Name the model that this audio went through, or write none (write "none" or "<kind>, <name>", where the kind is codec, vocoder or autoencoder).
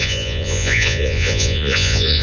vocoder, Vocos